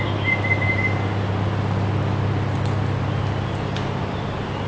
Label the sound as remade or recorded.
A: recorded